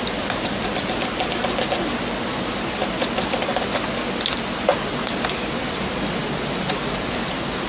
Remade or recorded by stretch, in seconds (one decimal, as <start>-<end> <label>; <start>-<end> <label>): 0.0-7.7 recorded